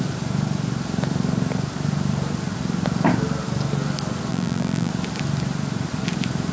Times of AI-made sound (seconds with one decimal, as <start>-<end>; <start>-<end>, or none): 4.3-4.9